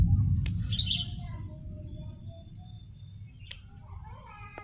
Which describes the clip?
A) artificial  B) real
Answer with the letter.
B